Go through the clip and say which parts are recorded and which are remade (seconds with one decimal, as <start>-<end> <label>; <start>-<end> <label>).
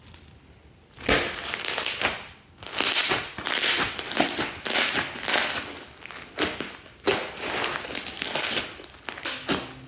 0.0-9.9 recorded